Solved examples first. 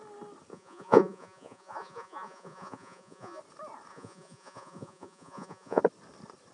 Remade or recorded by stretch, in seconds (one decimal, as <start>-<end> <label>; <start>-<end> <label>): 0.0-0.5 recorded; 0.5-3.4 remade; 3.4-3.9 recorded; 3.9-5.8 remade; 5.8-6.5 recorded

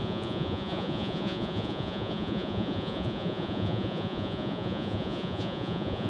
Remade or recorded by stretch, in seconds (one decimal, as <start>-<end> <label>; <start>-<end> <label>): 0.0-6.1 remade

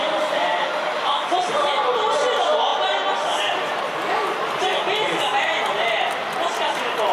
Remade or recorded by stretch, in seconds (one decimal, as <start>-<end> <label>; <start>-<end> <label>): 0.0-7.1 recorded

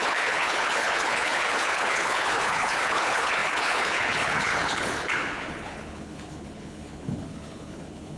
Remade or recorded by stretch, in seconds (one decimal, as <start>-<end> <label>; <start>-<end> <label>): 0.0-8.2 remade